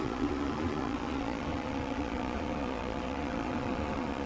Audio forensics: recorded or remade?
remade